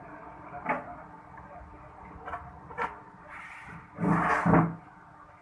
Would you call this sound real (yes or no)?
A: yes